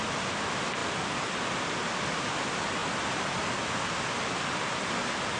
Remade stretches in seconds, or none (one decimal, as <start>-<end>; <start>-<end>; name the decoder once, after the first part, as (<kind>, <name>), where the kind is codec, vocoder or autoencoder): none